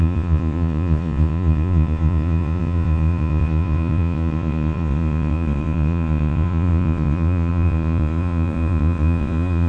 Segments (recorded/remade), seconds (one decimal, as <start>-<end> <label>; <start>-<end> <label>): 0.0-9.7 remade